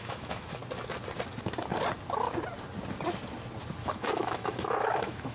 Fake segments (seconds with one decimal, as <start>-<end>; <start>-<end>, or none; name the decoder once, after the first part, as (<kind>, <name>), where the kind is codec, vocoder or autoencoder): 0.0-0.6 (autoencoder, DAC-VAE); 3.8-5.3